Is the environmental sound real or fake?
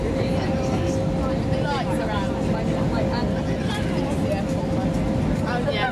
real